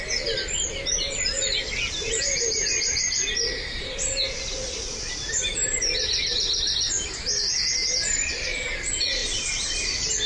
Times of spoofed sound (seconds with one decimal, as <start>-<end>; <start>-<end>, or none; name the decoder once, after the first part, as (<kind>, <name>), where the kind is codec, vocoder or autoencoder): none